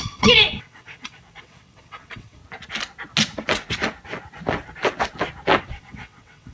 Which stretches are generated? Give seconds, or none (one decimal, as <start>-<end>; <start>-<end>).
0.0-2.4; 5.6-6.5